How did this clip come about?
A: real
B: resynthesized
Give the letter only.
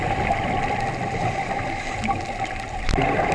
A